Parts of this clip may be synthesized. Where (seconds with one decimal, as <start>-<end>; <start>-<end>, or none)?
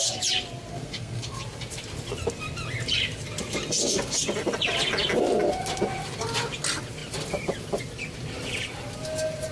0.7-1.4